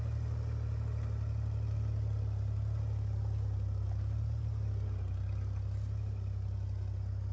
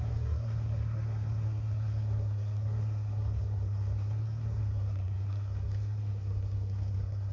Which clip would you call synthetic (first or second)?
second